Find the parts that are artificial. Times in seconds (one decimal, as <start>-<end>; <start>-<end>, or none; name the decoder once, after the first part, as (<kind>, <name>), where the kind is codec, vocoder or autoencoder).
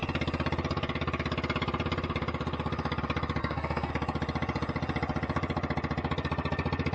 3.4-3.9 (codec, SNAC)